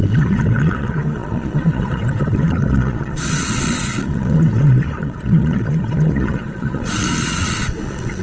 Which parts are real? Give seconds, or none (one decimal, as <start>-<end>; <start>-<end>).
none